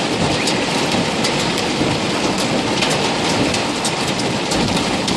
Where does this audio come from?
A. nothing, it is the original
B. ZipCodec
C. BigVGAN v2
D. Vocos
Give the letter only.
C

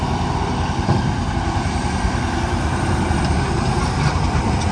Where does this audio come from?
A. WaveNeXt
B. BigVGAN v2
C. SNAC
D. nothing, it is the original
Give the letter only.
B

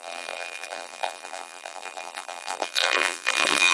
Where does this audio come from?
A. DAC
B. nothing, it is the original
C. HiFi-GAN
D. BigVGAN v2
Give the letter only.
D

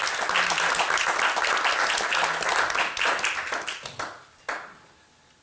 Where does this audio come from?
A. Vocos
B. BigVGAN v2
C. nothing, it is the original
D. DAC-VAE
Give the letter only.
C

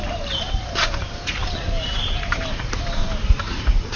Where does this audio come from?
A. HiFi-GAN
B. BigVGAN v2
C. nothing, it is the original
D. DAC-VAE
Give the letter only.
B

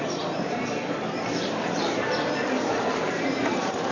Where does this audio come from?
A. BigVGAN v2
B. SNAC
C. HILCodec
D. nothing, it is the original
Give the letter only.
A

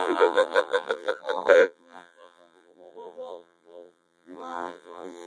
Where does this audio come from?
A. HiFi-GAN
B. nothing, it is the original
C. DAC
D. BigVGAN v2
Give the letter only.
D